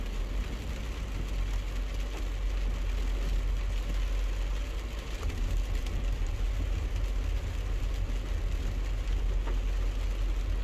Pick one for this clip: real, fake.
real